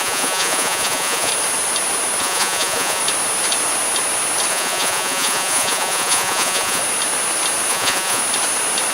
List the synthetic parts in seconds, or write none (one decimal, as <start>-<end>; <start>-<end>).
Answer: 0.0-1.3; 2.2-3.0; 4.5-6.8; 7.7-8.2